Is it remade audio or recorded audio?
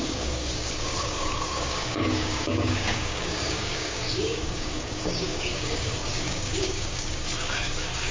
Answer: remade